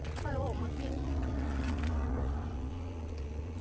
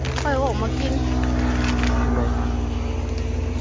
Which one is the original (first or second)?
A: second